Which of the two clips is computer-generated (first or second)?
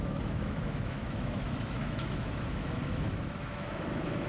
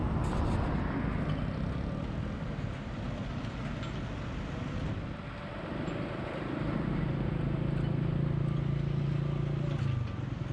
first